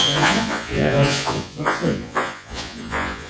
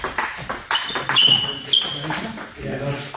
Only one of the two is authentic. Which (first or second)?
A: second